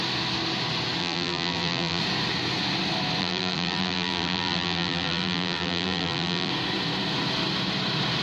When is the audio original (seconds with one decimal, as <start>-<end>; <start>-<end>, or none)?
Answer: 0.0-1.0; 2.0-3.2; 6.5-8.2